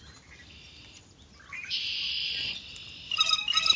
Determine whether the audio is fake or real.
fake